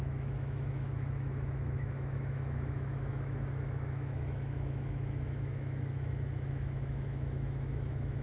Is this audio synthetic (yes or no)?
yes